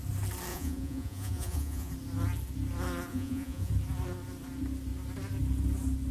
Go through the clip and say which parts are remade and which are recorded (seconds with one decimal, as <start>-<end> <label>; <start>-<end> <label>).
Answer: 0.0-0.5 recorded; 0.5-1.9 remade; 1.9-3.1 recorded; 3.1-3.7 remade; 3.7-6.1 recorded